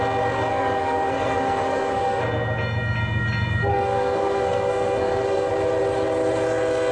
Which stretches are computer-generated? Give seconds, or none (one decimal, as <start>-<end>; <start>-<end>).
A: 0.5-2.2; 3.7-5.5